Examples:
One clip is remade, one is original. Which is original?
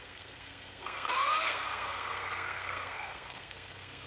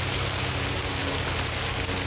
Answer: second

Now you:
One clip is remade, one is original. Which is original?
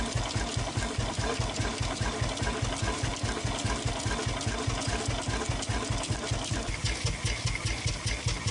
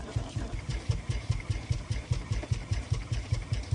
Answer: first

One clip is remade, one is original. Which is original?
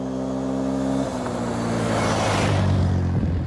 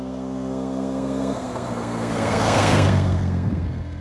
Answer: first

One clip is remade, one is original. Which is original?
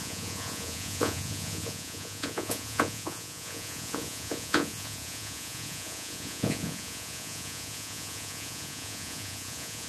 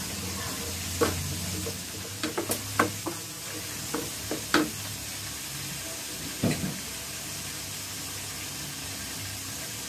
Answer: second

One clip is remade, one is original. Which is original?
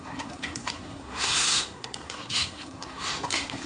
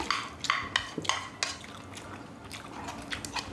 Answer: second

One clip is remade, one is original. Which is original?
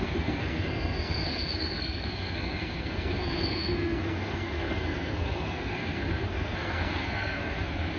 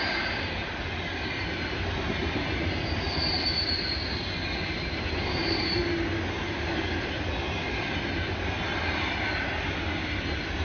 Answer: second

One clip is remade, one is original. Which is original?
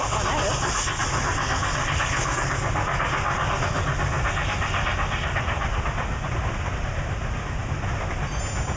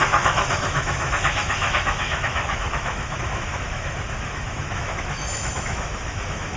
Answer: first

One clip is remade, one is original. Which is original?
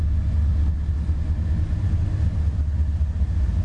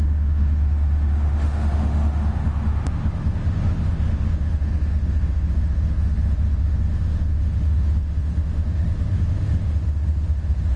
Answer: first